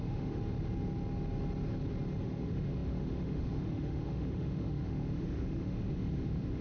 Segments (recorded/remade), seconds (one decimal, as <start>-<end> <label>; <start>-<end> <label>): 0.0-0.4 remade; 0.4-2.2 recorded; 2.2-6.6 remade